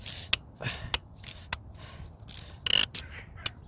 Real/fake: real